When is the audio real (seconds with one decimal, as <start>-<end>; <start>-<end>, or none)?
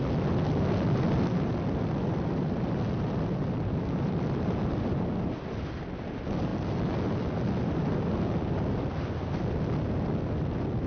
0.0-10.9